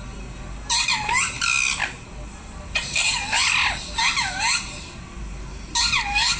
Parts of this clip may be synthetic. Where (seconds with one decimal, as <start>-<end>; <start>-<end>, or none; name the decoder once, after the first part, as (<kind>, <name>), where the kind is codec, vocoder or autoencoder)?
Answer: none